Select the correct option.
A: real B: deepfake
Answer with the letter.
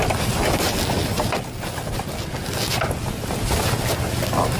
A